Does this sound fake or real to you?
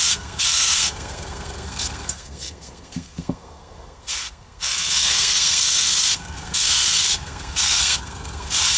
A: fake